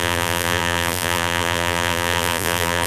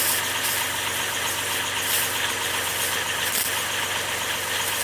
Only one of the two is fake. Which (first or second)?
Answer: first